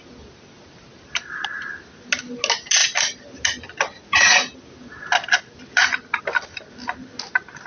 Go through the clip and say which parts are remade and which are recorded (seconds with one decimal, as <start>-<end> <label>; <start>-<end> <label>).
0.0-7.7 recorded